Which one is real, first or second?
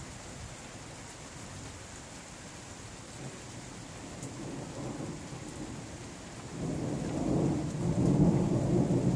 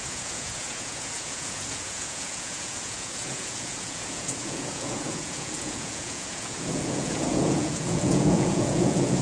first